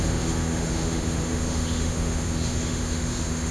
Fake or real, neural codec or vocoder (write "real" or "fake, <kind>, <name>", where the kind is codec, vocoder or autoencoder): fake, autoencoder, DAC-VAE